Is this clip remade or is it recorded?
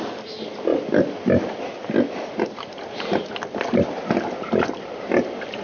recorded